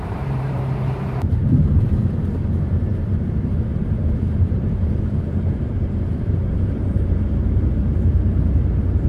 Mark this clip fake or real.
fake